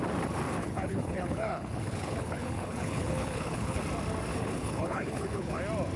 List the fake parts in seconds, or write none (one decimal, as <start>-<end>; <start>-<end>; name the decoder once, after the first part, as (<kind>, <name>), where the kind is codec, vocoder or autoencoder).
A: 0.6-3.8 (codec, HILCodec); 4.3-5.6